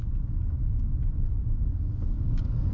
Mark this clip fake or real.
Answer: real